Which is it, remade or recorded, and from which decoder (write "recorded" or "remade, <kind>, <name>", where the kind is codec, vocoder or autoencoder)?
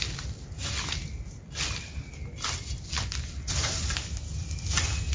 recorded